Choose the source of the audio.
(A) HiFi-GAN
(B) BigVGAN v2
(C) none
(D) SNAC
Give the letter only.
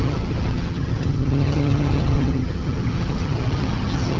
A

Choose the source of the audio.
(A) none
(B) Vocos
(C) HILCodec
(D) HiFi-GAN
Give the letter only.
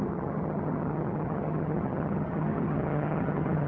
D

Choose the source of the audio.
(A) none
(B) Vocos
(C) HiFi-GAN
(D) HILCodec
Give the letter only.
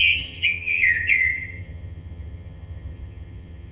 C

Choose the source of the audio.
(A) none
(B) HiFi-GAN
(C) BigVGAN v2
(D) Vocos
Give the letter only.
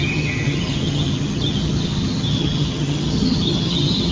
B